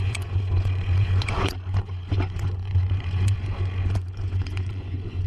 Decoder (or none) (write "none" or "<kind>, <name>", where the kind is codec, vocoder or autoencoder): vocoder, Vocos